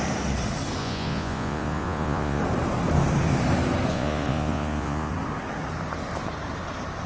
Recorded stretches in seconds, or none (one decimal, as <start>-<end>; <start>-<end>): 0.0-0.8; 2.4-3.9; 5.1-7.1